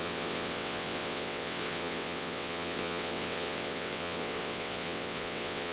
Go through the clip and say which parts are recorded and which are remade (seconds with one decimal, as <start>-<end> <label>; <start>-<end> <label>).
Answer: 0.0-5.7 remade